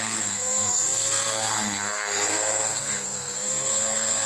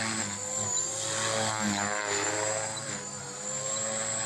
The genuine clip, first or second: second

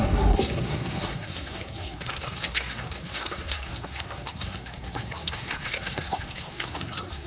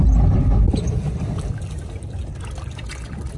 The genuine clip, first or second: second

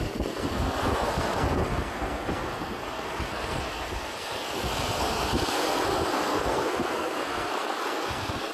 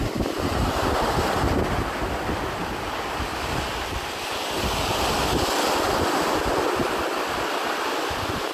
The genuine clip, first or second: second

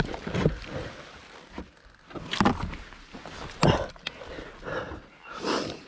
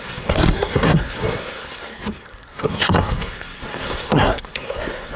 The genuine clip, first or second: first